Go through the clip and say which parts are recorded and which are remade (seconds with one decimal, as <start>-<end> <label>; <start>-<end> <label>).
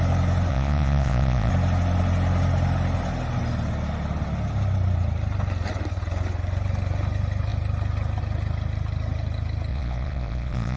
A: 0.0-0.5 recorded; 0.5-1.5 remade; 1.5-9.7 recorded; 9.7-10.8 remade